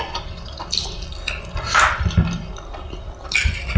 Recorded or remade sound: recorded